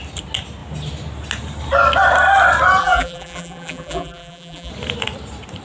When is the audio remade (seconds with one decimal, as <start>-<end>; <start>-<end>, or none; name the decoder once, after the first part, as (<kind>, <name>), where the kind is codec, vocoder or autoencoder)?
2.8-4.7 (vocoder, BigVGAN v2)

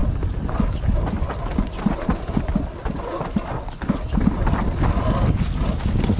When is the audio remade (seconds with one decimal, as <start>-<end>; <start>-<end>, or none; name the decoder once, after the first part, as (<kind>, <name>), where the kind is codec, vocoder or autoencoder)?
none